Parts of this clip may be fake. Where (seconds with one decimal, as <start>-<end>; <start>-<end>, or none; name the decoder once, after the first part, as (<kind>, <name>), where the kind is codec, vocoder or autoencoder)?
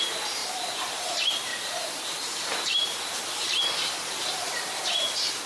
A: 0.4-1.0 (vocoder, BigVGAN v2); 1.5-4.1